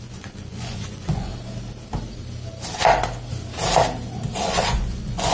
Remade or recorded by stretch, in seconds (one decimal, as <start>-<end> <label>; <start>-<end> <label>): 0.0-1.3 remade; 1.3-4.4 recorded; 4.4-5.3 remade

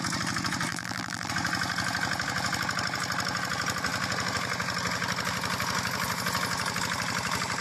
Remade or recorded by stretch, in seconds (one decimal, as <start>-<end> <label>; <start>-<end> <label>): 0.0-0.7 recorded; 0.7-1.3 remade; 1.3-7.6 recorded

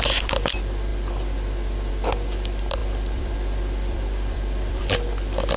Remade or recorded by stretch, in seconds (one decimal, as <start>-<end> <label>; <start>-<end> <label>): 0.0-2.8 recorded; 2.8-4.9 remade; 4.9-5.6 recorded

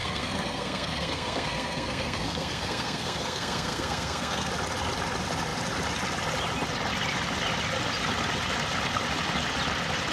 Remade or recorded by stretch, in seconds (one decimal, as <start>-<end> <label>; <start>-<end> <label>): 0.0-4.5 remade; 4.5-10.1 recorded

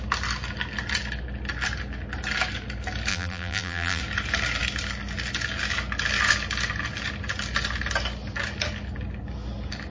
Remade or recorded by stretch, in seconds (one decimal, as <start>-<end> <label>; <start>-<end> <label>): 0.0-3.1 recorded; 3.1-4.0 remade; 4.0-9.9 recorded

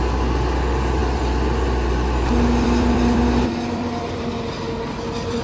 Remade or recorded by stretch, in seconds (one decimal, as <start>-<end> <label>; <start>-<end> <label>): 0.0-1.0 recorded; 1.0-4.2 remade; 4.2-5.4 recorded

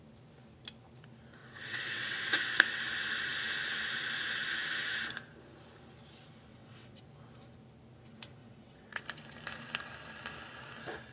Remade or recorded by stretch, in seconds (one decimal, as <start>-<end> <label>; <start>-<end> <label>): 0.0-1.4 recorded; 1.4-2.8 remade; 2.8-6.5 recorded; 6.5-7.0 remade; 7.0-8.4 recorded; 8.4-9.0 remade; 9.0-11.1 recorded